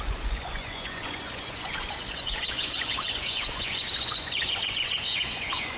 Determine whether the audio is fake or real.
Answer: fake